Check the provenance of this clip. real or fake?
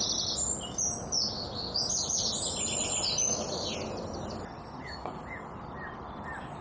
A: real